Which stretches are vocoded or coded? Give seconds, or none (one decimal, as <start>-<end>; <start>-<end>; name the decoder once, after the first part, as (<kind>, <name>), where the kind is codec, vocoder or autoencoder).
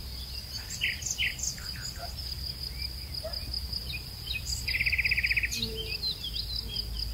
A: 3.8-4.8 (vocoder, BigVGAN v2)